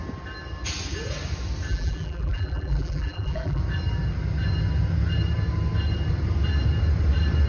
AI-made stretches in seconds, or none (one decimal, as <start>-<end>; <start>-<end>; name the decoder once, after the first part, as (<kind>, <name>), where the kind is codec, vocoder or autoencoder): 1.7-3.6 (vocoder, BigVGAN v2)